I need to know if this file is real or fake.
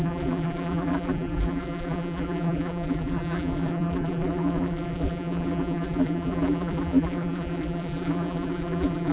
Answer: fake